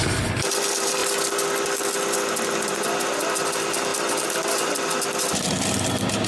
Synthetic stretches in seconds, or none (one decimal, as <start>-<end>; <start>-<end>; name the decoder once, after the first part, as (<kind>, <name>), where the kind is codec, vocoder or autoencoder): 0.0-1.0 (vocoder, BigVGAN v2); 3.3-6.3